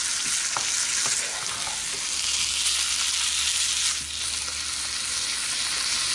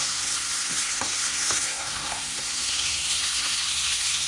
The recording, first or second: first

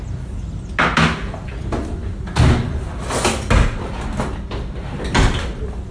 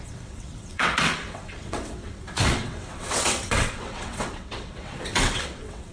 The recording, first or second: first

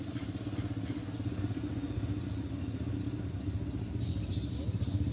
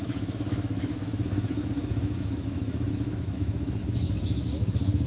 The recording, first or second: first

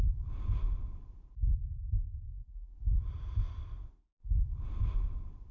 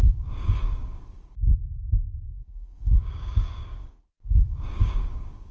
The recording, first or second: first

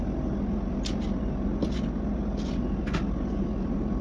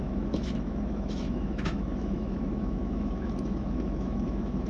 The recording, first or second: first